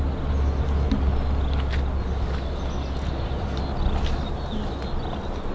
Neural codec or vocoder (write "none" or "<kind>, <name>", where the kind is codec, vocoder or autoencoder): none